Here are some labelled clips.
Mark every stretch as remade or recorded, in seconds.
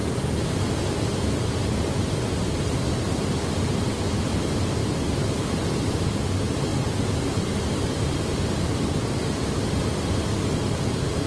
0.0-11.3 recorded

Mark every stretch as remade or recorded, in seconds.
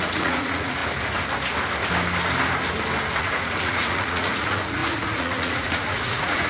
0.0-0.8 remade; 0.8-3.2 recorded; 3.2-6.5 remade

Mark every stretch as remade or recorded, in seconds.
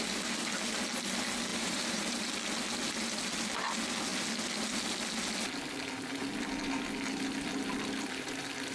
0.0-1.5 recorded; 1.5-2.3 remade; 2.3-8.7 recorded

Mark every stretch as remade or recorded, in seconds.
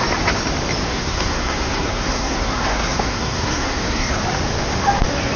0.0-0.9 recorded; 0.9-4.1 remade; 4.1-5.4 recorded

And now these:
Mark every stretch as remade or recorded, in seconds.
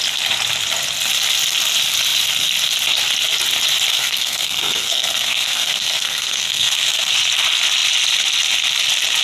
0.0-3.9 recorded; 3.9-7.1 remade; 7.1-9.2 recorded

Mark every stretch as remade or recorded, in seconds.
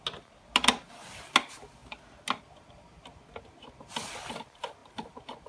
0.0-5.5 recorded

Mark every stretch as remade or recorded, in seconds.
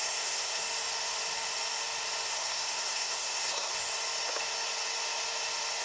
0.0-0.6 remade; 0.6-2.3 recorded; 2.3-3.7 remade; 3.7-5.8 recorded